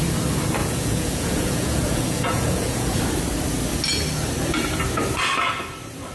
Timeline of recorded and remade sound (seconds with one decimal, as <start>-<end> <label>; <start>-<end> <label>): 0.0-0.6 recorded; 0.6-3.0 remade; 3.0-6.1 recorded